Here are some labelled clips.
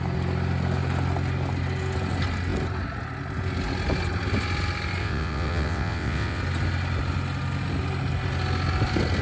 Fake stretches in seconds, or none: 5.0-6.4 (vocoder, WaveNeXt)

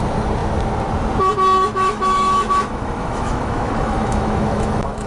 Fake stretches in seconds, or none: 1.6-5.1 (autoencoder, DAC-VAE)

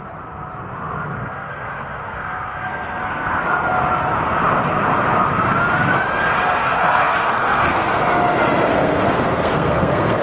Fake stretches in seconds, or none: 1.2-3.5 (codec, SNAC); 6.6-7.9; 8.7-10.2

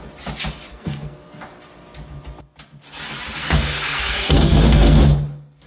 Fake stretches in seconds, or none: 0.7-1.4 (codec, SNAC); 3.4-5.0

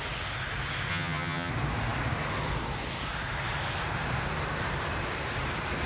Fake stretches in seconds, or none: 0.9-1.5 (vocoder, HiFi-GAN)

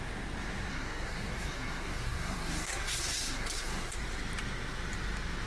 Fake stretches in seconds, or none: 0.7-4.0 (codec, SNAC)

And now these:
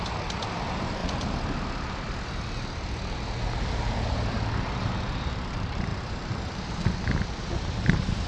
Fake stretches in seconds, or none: 0.0-1.0 (vocoder, BigVGAN v2); 5.5-5.9; 7.7-8.3